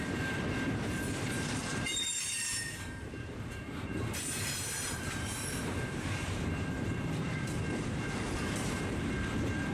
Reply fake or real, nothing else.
fake